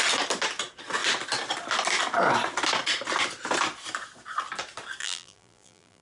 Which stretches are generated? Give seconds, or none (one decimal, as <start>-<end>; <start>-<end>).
5.0-6.0